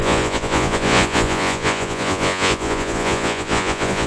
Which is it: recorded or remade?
remade